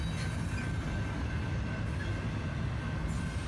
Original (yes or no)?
yes